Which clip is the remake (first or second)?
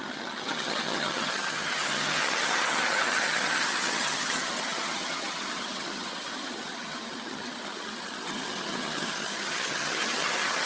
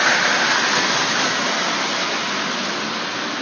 first